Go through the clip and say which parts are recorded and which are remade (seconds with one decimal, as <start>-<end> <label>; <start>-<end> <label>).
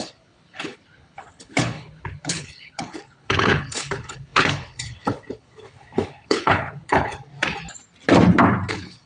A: 0.0-7.3 remade; 7.3-8.7 recorded; 8.7-9.1 remade